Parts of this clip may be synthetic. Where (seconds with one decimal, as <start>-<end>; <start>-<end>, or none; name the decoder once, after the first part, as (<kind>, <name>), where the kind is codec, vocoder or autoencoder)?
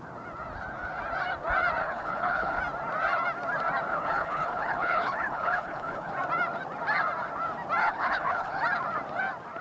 1.8-2.6 (codec, HILCodec); 3.9-6.1; 7.8-8.6